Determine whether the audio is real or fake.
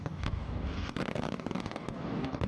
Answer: fake